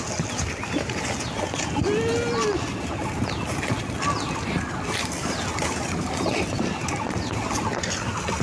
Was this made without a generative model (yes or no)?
yes